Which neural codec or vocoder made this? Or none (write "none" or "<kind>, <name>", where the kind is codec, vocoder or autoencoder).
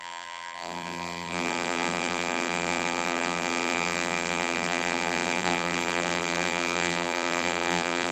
vocoder, BigVGAN v2